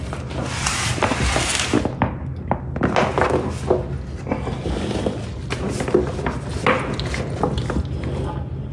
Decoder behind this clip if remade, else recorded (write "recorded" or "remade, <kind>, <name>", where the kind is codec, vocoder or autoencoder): recorded